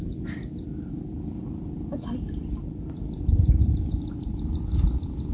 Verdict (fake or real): real